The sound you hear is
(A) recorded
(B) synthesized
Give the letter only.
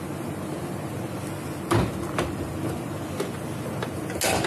A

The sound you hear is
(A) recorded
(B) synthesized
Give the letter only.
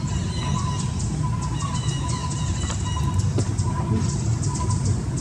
A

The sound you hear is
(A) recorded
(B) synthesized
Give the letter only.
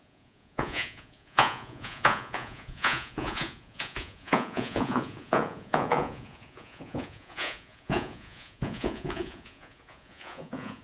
B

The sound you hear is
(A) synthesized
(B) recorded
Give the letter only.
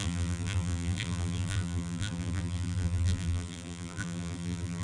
A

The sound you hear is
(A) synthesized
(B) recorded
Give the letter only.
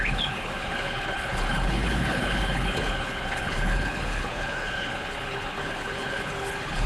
A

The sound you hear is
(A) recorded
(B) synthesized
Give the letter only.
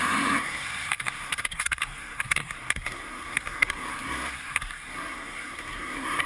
B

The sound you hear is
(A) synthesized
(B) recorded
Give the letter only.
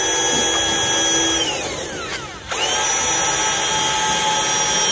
B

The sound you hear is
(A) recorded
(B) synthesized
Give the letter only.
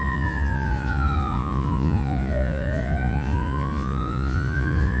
B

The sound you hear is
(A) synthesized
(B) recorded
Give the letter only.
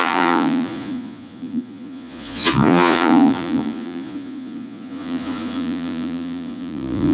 A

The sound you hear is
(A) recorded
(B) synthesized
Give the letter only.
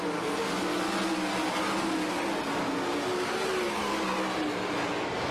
A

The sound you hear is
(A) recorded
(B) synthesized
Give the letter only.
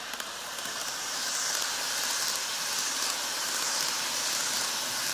B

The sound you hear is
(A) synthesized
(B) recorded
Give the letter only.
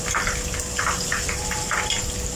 B